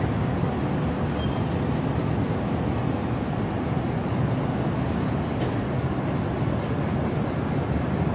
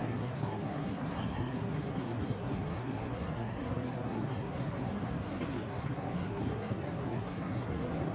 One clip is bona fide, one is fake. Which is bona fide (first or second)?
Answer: first